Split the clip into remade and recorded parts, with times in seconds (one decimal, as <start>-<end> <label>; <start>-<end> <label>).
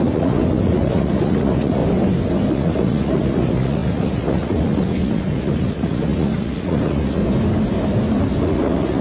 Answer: 0.0-1.8 remade; 1.8-2.5 recorded; 2.5-7.2 remade; 7.2-8.4 recorded; 8.4-9.0 remade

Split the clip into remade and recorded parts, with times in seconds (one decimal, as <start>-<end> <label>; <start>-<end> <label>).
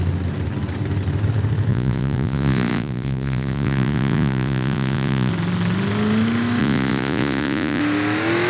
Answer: 0.0-1.7 recorded; 1.7-5.3 remade; 5.3-6.6 recorded; 6.6-7.8 remade; 7.8-8.5 recorded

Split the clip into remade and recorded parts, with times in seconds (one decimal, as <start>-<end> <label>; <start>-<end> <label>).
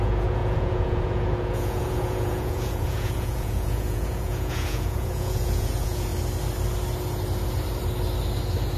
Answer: 0.0-6.1 remade; 6.1-8.8 recorded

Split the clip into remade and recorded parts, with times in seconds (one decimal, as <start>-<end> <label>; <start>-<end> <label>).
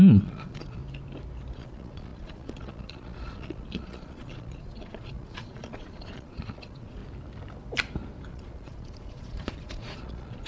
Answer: 0.0-0.8 remade; 0.8-1.5 recorded; 1.5-7.0 remade; 7.0-8.3 recorded; 8.3-10.5 remade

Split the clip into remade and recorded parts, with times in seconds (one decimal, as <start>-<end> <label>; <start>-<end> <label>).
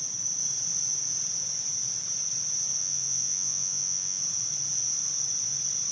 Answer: 0.0-2.8 recorded; 2.8-4.2 remade; 4.2-5.9 recorded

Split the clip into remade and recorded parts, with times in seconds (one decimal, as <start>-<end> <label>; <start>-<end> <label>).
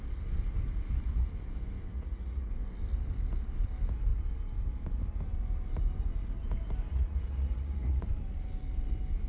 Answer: 0.0-1.9 recorded; 1.9-2.5 remade; 2.5-6.9 recorded; 6.9-8.1 remade; 8.1-9.3 recorded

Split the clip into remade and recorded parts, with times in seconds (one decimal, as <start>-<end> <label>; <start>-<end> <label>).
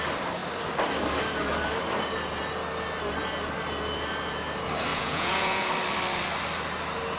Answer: 0.0-4.9 recorded; 4.9-5.7 remade; 5.7-7.2 recorded